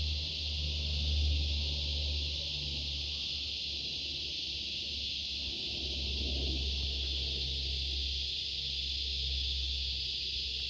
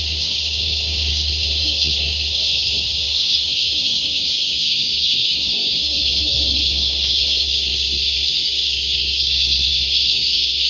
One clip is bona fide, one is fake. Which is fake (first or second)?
second